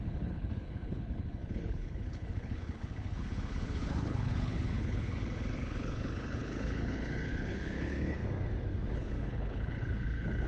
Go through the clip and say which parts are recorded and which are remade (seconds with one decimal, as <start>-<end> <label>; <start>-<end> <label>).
0.0-8.2 remade; 8.2-8.9 recorded; 8.9-10.5 remade